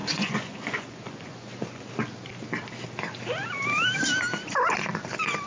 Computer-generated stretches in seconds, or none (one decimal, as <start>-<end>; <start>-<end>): 0.0-1.9